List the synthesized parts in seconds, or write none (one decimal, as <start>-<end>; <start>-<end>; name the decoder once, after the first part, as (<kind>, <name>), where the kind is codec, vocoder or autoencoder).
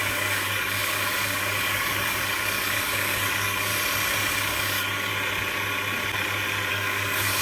0.0-3.7 (codec, DAC); 4.3-5.1; 6.7-7.4